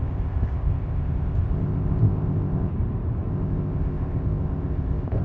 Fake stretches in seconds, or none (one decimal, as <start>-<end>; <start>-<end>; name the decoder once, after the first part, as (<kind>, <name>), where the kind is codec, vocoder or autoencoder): 0.0-2.7 (codec, ZipCodec); 3.3-5.2